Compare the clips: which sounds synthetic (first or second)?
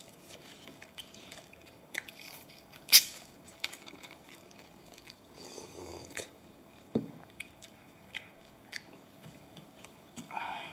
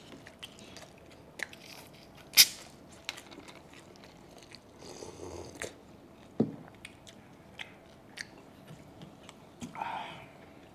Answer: first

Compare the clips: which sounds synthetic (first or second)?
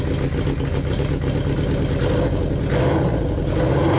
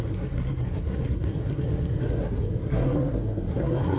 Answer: second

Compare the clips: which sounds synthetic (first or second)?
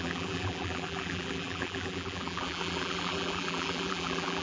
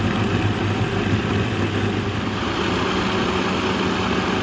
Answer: first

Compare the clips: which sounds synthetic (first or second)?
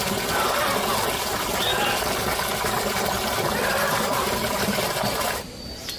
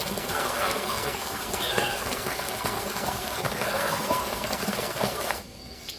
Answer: second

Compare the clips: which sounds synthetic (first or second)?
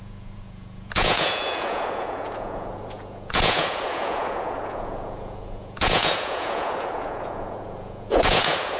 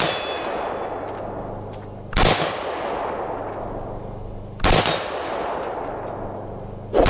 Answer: first